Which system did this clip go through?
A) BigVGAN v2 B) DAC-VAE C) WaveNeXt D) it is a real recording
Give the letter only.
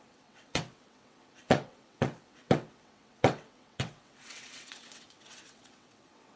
C